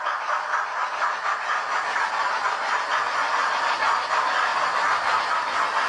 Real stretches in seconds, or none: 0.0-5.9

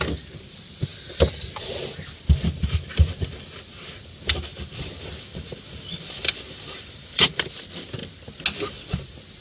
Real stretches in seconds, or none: 0.0-4.5; 7.5-9.4

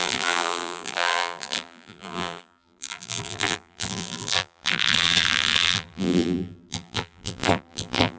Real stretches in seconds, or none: none

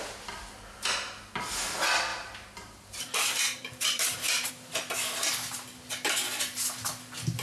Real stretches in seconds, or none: 0.0-2.1; 4.5-7.4